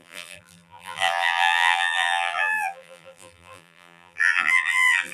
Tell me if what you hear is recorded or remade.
remade